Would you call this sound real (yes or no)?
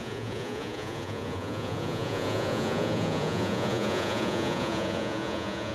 no